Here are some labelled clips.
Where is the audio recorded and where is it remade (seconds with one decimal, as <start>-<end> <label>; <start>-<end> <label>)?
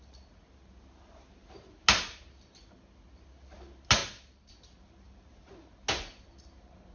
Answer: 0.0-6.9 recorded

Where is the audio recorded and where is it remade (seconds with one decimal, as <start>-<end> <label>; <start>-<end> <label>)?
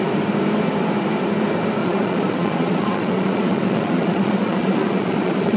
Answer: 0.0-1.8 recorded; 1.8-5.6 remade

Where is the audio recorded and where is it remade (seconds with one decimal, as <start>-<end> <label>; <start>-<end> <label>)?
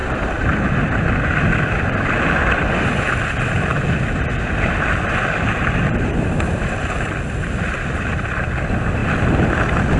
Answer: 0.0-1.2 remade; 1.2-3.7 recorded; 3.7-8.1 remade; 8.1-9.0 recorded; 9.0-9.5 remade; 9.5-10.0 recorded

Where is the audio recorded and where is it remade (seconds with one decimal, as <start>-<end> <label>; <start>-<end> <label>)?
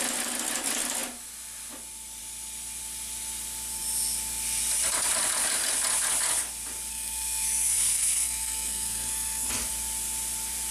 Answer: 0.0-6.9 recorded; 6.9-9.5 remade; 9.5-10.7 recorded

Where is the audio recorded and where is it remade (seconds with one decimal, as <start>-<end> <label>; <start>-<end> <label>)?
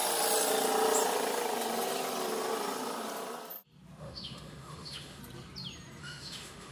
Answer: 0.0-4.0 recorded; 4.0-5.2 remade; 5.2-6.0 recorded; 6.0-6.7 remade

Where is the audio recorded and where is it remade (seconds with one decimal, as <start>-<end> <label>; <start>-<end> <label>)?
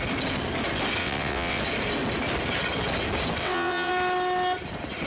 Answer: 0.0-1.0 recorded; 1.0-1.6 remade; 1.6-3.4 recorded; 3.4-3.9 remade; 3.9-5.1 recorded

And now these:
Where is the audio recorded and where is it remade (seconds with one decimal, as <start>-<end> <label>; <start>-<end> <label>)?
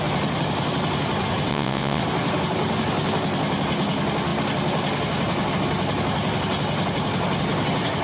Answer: 0.0-1.5 recorded; 1.5-2.0 remade; 2.0-8.0 recorded